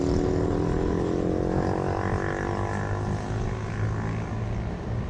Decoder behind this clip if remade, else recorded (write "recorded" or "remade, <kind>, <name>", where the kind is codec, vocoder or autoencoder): recorded